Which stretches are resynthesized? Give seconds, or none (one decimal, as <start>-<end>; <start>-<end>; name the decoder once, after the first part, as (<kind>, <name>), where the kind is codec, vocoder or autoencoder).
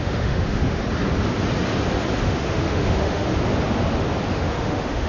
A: 0.0-0.8 (autoencoder, DAC-VAE); 2.2-3.3; 4.3-5.1